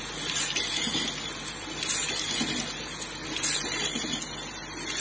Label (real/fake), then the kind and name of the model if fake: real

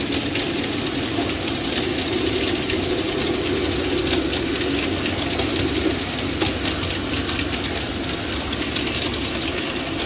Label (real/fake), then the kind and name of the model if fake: real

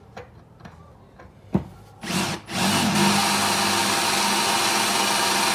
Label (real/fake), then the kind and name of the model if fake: real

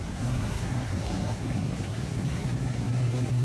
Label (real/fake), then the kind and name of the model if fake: fake, codec, SNAC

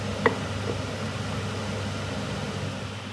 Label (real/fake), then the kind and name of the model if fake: real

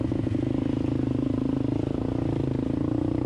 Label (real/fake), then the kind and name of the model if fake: real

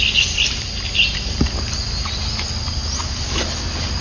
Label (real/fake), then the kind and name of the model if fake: real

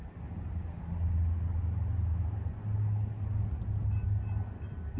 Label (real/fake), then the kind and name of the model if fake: real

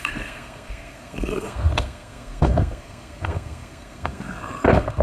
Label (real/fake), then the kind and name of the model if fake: fake, codec, SNAC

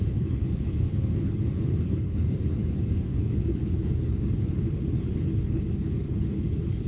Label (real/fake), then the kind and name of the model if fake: fake, codec, HILCodec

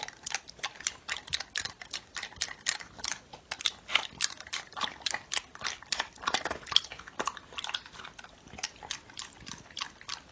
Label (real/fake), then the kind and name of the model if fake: real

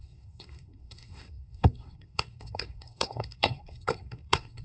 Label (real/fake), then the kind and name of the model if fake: fake, codec, SNAC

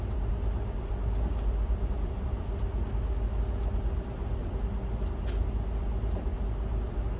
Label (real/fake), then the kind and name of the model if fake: real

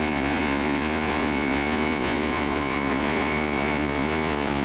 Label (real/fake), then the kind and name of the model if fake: fake, vocoder, Vocos